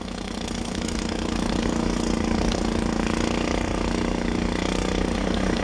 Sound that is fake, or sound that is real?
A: fake